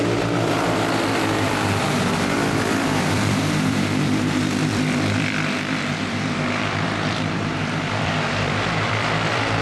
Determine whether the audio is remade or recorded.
remade